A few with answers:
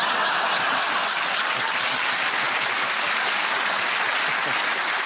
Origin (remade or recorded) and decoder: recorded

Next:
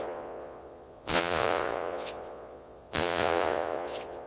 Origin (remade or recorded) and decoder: remade, vocoder, Vocos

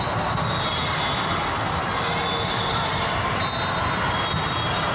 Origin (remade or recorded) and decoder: recorded